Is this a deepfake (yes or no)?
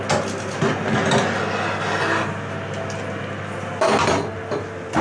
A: no